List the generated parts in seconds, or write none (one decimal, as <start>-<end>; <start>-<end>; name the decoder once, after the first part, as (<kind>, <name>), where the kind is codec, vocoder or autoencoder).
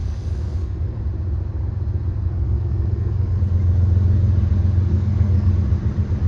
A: 0.0-1.0 (codec, SNAC); 2.2-3.4; 4.9-5.5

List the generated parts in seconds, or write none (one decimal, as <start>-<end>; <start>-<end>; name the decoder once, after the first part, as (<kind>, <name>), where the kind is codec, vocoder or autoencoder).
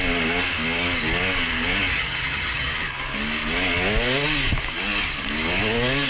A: 1.9-2.7 (vocoder, HiFi-GAN)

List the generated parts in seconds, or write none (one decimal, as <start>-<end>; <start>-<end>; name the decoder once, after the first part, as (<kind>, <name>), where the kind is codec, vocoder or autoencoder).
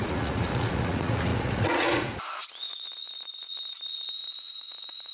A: 0.0-5.1 (vocoder, Vocos)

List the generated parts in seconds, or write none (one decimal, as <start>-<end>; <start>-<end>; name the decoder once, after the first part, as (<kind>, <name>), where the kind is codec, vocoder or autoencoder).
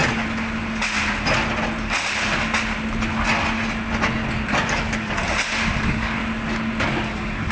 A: 4.5-5.2 (codec, DAC); 5.8-6.2; 6.8-7.5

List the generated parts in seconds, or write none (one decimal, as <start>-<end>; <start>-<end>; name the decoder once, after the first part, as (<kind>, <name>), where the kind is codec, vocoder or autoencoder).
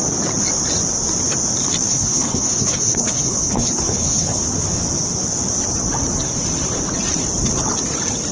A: 1.9-4.4 (codec, HILCodec)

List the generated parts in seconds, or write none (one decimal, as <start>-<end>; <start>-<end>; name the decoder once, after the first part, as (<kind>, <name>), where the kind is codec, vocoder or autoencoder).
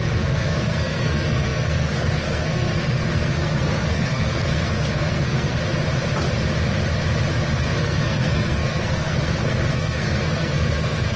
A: 0.0-5.6 (codec, SNAC); 7.6-11.2